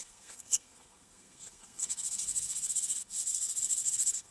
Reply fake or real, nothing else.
fake